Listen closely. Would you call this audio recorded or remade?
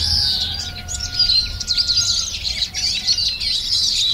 recorded